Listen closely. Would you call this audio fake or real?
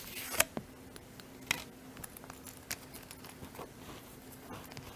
real